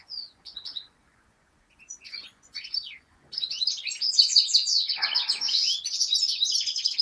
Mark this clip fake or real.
fake